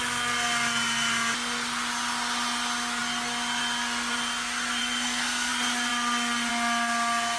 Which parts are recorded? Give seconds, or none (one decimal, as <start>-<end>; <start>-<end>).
0.0-4.8; 5.5-7.4